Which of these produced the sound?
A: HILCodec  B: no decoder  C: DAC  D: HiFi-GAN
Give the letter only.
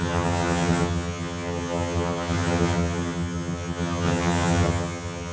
D